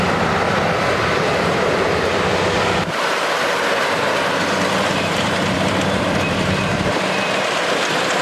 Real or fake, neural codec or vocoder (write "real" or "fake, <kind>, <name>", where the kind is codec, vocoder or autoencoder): fake, vocoder, BigVGAN v2